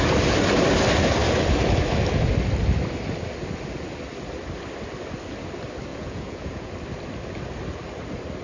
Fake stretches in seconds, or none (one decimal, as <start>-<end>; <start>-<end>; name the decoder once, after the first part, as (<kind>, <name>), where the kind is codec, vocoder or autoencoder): 5.9-6.7 (vocoder, Vocos)